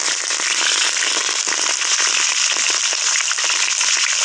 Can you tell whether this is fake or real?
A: real